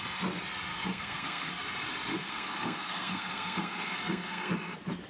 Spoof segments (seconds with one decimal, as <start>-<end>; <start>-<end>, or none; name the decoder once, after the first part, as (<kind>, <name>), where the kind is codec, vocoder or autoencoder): 0.7-1.5 (codec, SNAC); 2.1-4.5